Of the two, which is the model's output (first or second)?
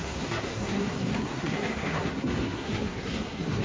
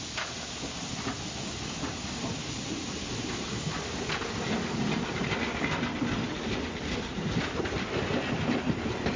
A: first